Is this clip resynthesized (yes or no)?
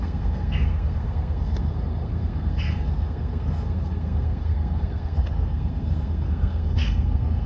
yes